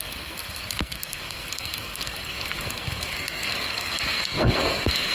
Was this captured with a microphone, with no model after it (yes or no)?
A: no